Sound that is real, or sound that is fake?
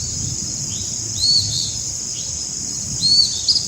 real